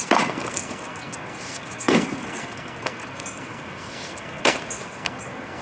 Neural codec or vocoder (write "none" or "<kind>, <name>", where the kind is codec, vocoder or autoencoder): codec, SNAC